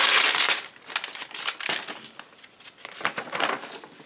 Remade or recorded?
recorded